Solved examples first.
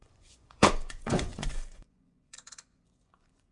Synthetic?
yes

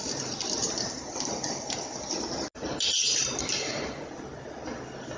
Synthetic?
no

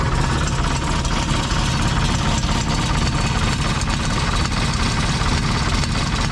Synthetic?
no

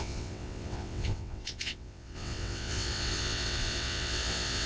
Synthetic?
yes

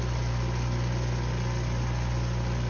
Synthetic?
no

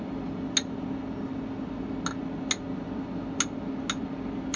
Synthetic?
no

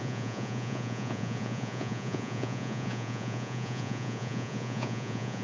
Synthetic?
yes